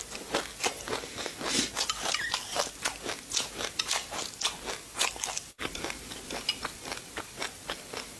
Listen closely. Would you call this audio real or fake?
real